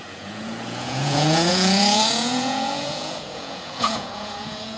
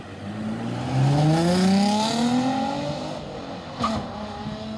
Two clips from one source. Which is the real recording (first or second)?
second